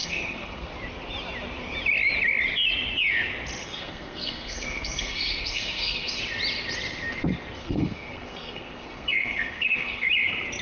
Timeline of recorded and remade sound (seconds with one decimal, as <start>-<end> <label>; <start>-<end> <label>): 0.0-0.7 remade; 0.7-3.6 recorded; 3.6-6.2 remade; 6.2-7.6 recorded; 7.6-10.1 remade; 10.1-10.6 recorded